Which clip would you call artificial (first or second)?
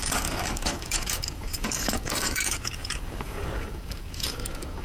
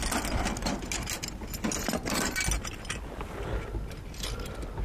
first